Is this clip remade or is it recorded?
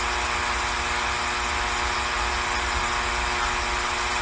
recorded